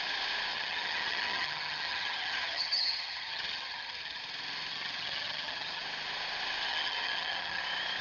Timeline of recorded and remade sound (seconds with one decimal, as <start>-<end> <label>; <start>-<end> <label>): 0.0-0.5 recorded; 0.5-4.2 remade; 4.2-4.7 recorded; 4.7-5.8 remade; 5.8-6.7 recorded; 6.7-7.6 remade; 7.6-8.0 recorded

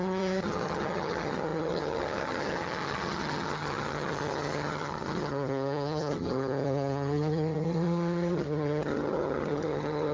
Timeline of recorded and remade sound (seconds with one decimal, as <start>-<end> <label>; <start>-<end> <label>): 0.0-10.1 remade

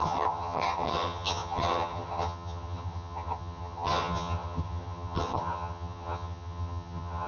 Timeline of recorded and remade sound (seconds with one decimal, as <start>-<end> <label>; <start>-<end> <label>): 0.0-7.3 remade